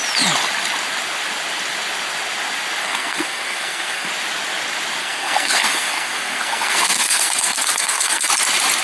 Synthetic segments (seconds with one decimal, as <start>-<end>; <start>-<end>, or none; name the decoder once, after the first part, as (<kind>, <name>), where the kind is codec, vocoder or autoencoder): 2.8-4.1 (codec, SNAC); 5.0-8.3